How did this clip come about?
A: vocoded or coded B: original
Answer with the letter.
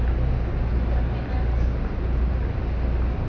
B